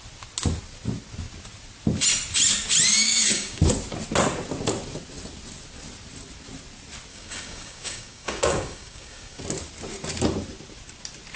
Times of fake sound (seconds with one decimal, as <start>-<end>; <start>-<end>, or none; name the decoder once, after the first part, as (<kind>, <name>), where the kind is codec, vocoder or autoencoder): 3.0-3.6 (codec, DAC); 7.1-9.4

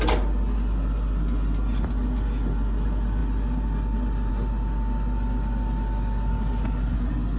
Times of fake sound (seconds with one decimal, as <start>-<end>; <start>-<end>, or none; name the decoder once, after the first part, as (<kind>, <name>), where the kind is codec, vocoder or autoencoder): none

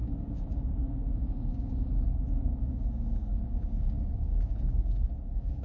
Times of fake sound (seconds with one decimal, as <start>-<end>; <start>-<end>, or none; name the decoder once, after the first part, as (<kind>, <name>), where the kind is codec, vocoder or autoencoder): 0.0-5.6 (codec, DAC)

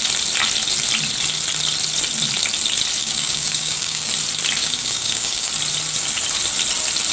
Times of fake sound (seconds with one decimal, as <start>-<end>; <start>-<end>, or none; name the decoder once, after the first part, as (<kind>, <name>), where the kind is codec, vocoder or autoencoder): 3.0-4.1 (codec, DAC); 4.6-5.5

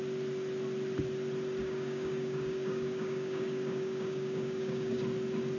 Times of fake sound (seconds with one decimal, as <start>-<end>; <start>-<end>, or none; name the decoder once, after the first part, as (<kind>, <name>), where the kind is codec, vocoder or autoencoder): 1.6-5.0 (codec, DAC)

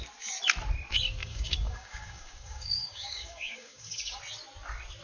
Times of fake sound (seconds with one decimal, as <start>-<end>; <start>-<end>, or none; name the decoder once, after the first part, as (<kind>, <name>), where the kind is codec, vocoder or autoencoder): 1.2-4.2 (codec, DAC)

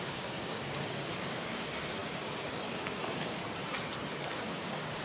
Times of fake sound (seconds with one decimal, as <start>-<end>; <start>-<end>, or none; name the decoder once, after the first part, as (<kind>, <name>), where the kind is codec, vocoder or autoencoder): 0.0-3.4 (codec, DAC); 4.3-5.0